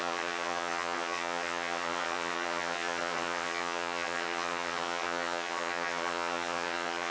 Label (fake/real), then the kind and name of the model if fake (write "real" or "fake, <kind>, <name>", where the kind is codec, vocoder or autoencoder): fake, vocoder, HiFi-GAN